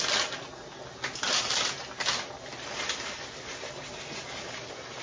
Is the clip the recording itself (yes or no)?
yes